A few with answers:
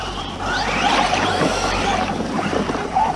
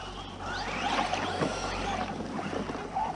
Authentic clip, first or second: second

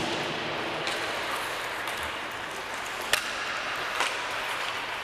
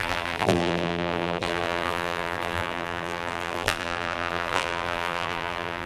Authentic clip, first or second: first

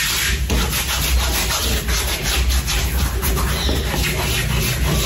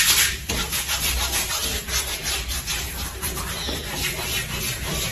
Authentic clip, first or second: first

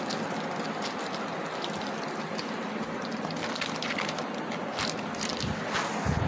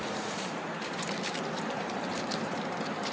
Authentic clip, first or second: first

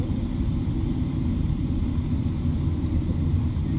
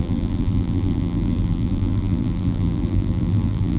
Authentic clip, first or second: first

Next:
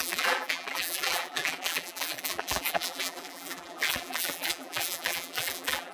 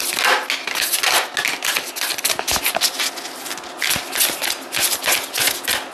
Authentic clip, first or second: second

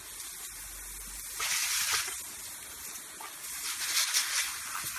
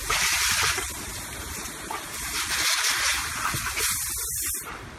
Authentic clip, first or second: first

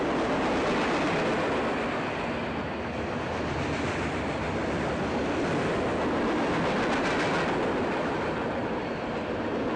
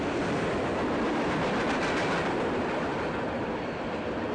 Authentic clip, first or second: first